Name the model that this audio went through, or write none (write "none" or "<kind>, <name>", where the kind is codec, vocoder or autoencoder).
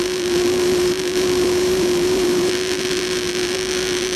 vocoder, BigVGAN v2